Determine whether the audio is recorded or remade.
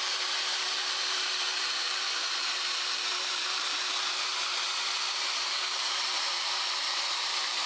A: remade